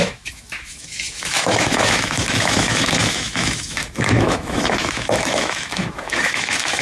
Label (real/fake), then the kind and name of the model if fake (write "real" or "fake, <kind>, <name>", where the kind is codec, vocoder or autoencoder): fake, autoencoder, DAC-VAE